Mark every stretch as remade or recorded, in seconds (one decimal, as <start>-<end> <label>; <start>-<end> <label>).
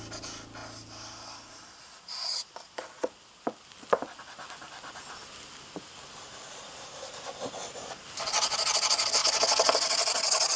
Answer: 0.0-10.6 recorded